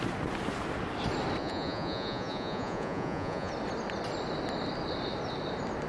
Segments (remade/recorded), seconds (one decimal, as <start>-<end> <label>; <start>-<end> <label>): 0.0-1.4 recorded; 1.4-3.5 remade; 3.5-5.9 recorded